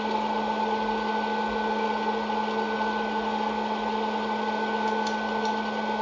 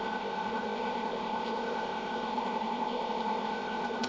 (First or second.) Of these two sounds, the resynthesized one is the second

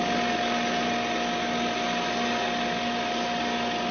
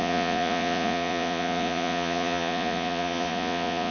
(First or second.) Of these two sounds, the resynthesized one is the second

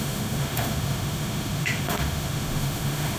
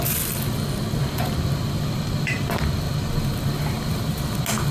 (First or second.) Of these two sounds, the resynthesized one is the first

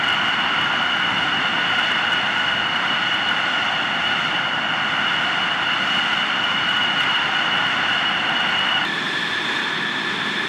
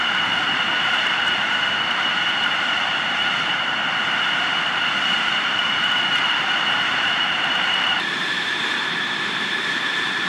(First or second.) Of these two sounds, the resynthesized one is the second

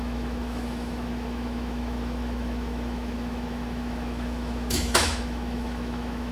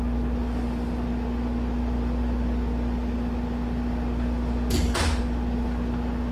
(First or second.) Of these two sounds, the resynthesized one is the first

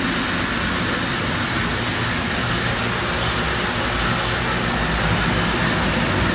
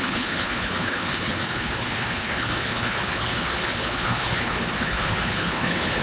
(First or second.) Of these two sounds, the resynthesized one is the second